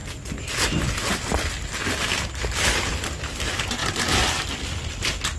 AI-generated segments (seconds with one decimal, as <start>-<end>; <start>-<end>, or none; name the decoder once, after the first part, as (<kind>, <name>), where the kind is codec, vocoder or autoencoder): none